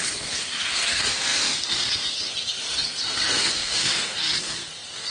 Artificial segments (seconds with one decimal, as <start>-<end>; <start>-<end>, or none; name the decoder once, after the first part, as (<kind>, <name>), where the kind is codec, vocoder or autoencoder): 0.0-5.1 (codec, SNAC)

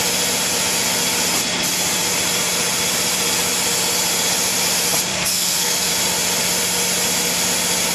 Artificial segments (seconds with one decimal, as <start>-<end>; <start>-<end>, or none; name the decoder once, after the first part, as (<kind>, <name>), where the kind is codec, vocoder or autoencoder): 5.1-5.9 (codec, SNAC)

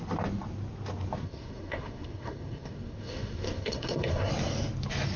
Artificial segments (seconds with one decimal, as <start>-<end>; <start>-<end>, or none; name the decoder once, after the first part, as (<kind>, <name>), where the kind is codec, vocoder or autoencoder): 1.2-4.3 (codec, SNAC)

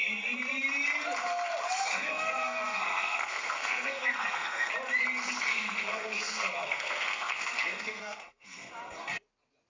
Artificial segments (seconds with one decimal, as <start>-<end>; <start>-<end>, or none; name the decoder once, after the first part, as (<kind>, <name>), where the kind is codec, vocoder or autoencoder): 1.9-4.7 (codec, SNAC); 5.5-8.7

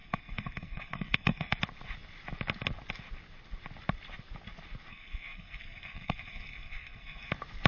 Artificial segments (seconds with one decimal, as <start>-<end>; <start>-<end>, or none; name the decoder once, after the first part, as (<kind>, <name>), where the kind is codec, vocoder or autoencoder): 0.0-1.6 (codec, SNAC); 4.9-7.3

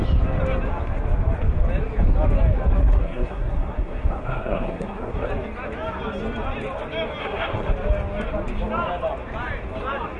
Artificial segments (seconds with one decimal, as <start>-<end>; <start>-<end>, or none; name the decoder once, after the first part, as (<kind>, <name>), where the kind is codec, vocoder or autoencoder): 2.8-5.3 (codec, SNAC); 7.2-7.7